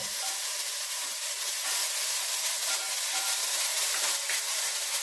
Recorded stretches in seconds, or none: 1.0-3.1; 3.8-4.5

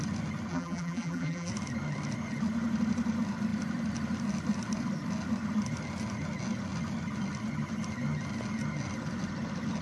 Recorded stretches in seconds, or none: 0.0-0.5; 1.5-9.8

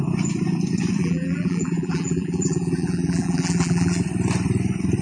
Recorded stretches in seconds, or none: 0.0-1.0; 4.0-5.0

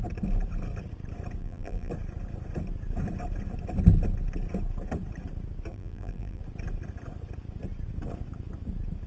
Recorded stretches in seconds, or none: 0.0-1.4; 1.9-5.7; 6.4-9.1

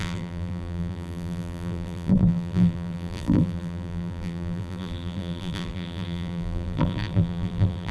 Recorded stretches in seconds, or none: none

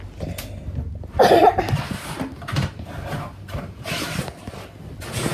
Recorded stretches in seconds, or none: 0.0-1.4; 4.5-5.3

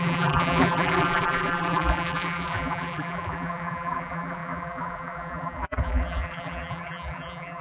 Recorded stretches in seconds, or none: none